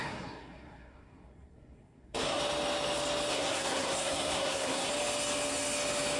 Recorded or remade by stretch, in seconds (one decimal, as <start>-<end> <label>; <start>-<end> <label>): 0.0-2.4 remade; 2.4-3.3 recorded; 3.3-4.9 remade; 4.9-6.2 recorded

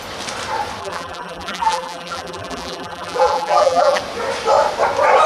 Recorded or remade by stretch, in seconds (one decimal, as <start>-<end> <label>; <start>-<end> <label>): 0.0-0.8 recorded; 0.8-4.0 remade; 4.0-5.3 recorded